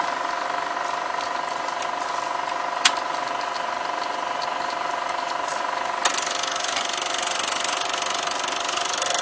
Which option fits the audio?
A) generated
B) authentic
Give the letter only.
B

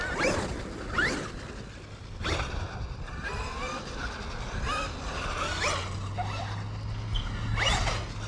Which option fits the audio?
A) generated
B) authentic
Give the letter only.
B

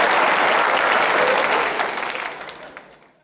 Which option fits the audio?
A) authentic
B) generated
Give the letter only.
A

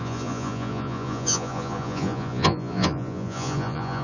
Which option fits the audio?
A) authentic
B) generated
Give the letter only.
B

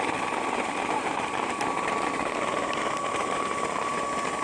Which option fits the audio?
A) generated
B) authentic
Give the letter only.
B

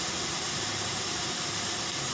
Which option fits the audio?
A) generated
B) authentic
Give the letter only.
A